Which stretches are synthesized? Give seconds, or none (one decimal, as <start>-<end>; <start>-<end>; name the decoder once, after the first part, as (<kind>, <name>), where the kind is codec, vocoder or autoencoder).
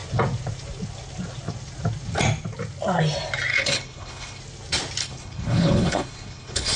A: 3.5-4.4 (codec, HILCodec); 5.0-6.8